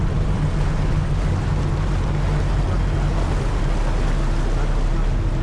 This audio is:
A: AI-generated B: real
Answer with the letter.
B